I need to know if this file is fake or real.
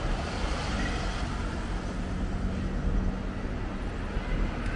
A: real